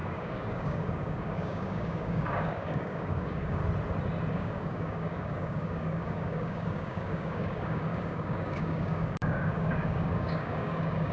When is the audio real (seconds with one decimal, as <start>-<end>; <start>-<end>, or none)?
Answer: 3.6-4.3